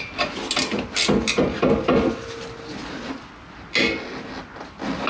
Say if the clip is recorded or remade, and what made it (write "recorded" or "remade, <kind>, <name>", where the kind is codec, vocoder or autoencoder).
recorded